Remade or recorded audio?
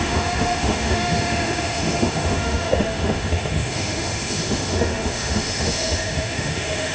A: remade